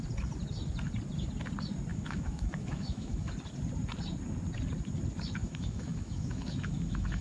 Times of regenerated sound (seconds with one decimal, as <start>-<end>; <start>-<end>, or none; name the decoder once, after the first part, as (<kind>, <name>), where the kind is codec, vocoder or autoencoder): 1.9-3.3 (autoencoder, DAC-VAE); 5.4-7.2